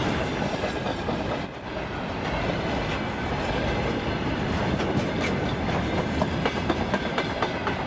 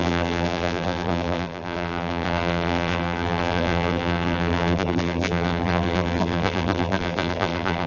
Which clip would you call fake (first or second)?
second